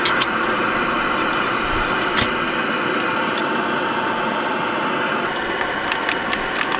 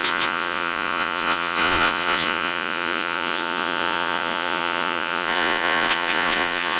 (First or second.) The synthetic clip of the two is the second